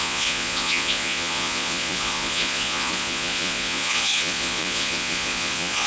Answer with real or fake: fake